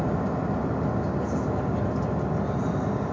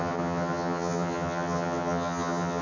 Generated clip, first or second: second